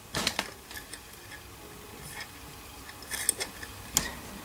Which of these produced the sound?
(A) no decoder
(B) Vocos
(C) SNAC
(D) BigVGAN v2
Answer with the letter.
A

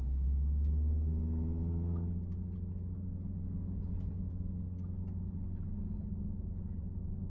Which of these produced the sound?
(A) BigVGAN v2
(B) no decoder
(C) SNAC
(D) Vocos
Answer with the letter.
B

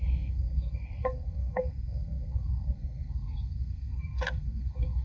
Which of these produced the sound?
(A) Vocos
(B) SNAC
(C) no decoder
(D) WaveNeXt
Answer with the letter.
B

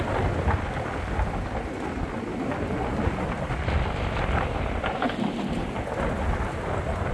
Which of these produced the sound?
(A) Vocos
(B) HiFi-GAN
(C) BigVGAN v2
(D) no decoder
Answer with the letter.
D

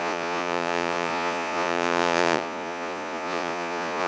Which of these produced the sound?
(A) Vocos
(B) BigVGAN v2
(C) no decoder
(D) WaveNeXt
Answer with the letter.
A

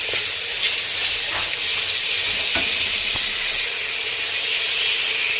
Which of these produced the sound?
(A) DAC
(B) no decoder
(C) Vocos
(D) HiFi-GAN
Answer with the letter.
B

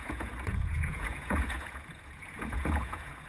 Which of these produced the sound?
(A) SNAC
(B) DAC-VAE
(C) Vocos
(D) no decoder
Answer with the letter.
C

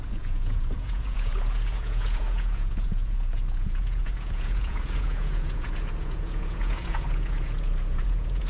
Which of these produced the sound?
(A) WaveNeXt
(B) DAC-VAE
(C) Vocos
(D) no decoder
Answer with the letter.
C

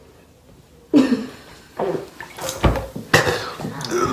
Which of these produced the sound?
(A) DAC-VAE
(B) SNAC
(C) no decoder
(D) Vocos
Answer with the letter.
C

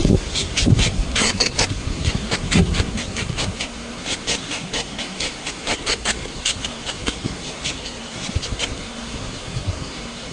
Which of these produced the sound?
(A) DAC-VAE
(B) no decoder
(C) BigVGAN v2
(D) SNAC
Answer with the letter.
D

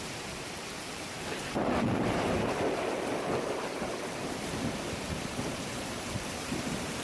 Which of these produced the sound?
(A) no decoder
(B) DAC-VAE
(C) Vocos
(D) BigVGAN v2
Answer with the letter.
D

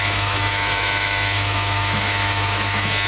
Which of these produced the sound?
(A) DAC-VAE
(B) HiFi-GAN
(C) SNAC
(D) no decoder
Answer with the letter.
A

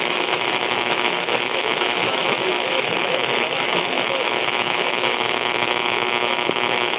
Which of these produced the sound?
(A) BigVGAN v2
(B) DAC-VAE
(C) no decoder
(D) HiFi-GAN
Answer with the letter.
B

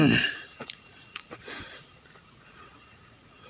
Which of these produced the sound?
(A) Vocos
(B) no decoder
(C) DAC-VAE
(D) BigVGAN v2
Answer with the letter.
A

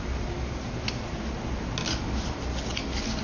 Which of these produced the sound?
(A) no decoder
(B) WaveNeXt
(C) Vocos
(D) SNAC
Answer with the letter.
A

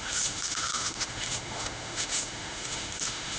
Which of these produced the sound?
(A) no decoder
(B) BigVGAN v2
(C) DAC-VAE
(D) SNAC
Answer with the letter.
C